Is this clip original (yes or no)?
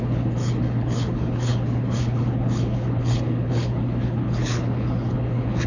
no